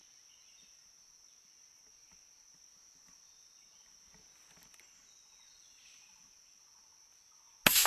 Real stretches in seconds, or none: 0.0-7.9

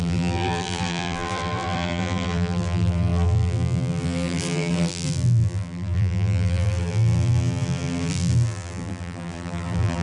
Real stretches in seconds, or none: none

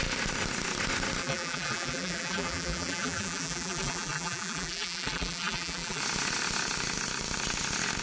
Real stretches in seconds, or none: 0.0-1.2; 6.0-8.0

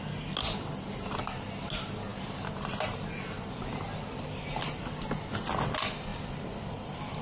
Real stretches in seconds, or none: 0.0-2.1; 4.9-6.1

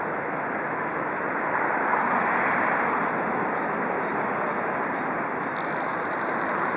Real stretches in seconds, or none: 0.0-0.9; 1.8-5.9